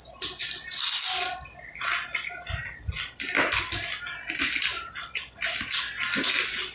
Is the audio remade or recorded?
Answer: recorded